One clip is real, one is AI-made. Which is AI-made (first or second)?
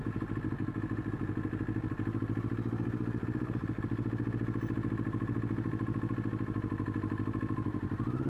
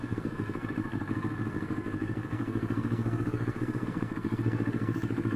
second